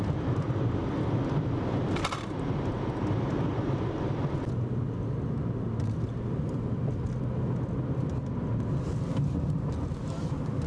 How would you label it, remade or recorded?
recorded